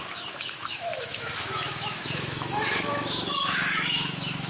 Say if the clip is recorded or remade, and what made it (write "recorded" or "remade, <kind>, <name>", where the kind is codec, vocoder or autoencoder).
remade, autoencoder, DAC-VAE